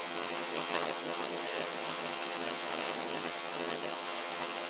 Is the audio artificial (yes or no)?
yes